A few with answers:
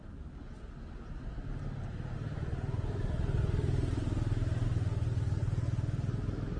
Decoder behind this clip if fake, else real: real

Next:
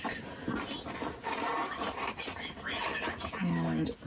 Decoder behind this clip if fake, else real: real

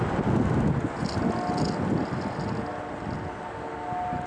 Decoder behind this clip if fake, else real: real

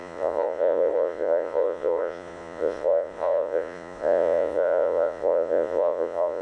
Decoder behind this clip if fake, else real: fake, vocoder, Vocos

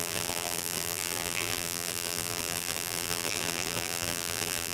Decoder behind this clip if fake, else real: fake, vocoder, BigVGAN v2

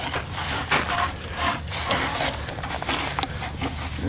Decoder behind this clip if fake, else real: real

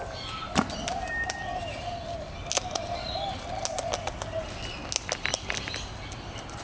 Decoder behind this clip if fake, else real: real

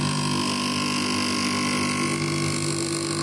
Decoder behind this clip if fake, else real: real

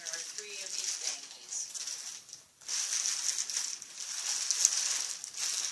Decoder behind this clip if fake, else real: real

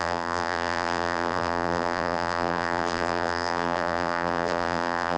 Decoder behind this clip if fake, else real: fake, vocoder, BigVGAN v2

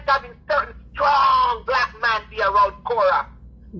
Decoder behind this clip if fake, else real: real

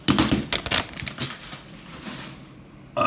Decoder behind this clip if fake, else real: real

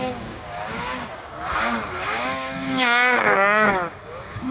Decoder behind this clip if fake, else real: fake, codec, DAC